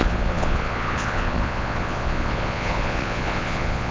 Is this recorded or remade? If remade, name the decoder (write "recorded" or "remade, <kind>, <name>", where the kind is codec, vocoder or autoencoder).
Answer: remade, vocoder, Vocos